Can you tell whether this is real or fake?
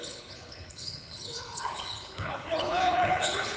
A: fake